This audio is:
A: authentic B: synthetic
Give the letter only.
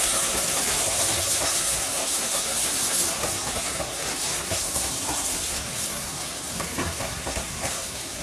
B